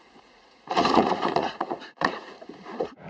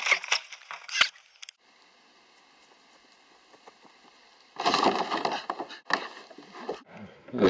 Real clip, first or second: second